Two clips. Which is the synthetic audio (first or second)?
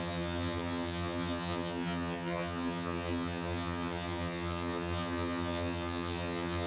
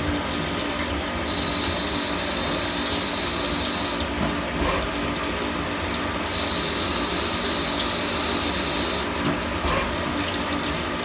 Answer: first